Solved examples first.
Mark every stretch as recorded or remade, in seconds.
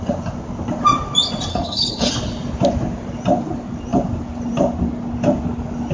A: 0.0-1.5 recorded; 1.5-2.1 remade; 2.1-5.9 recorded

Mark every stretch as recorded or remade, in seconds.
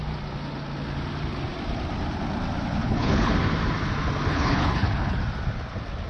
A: 0.0-2.8 recorded; 2.8-3.3 remade; 3.3-4.3 recorded; 4.3-5.2 remade; 5.2-6.1 recorded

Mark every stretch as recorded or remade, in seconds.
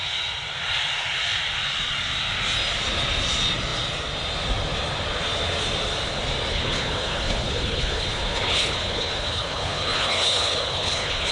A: 0.0-6.5 recorded; 6.5-11.3 remade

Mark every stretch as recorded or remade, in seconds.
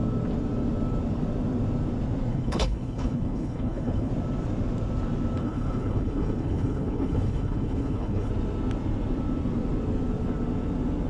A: 0.0-2.3 recorded; 2.3-4.1 remade; 4.1-5.4 recorded; 5.4-8.3 remade; 8.3-11.1 recorded